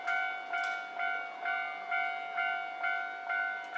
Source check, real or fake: real